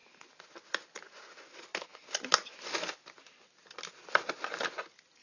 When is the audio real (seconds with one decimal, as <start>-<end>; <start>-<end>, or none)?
0.0-5.2